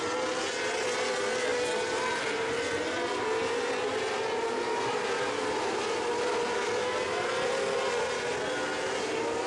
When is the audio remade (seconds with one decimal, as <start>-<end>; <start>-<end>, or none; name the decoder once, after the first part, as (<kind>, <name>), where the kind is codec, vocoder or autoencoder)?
none